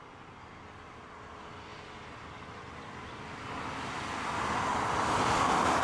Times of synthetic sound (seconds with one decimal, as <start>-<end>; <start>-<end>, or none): none